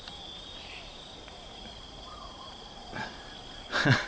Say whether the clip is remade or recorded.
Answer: remade